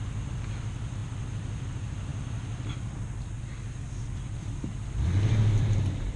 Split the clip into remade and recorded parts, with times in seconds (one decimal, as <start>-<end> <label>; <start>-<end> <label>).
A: 0.0-6.2 remade

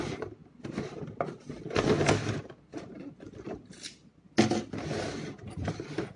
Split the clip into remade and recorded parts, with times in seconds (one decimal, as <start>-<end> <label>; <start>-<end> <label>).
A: 0.0-6.2 recorded

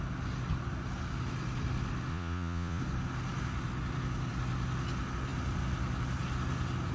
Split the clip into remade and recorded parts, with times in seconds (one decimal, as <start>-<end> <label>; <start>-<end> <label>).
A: 0.0-2.1 recorded; 2.1-2.8 remade; 2.8-6.9 recorded